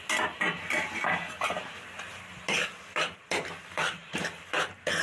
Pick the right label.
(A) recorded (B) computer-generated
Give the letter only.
A